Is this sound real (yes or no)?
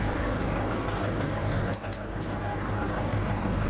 no